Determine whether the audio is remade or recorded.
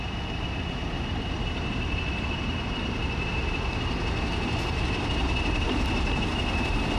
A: recorded